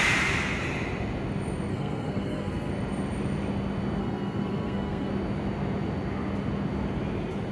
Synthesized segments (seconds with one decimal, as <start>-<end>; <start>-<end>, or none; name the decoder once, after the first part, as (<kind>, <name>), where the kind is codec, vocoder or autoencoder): 1.7-2.7 (codec, SNAC); 4.0-5.1